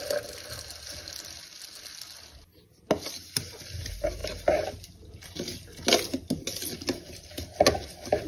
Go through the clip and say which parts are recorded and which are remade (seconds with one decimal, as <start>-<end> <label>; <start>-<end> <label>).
0.0-8.3 recorded